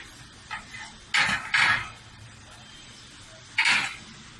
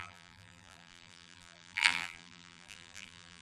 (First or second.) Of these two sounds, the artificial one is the second